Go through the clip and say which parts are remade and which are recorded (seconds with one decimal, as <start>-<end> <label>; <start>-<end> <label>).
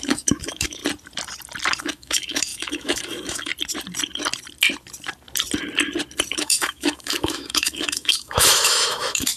0.0-0.8 remade; 0.8-1.8 recorded; 1.8-3.5 remade; 3.5-6.3 recorded; 6.3-9.4 remade